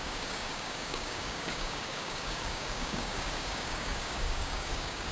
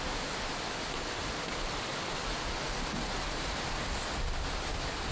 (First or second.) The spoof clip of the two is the first